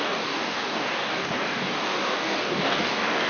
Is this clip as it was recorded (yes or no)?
no